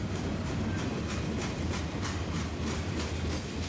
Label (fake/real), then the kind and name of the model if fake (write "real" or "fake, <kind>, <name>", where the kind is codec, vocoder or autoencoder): real